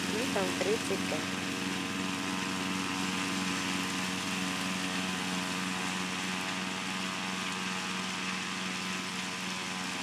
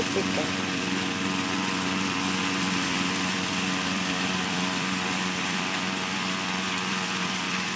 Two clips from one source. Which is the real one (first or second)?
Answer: first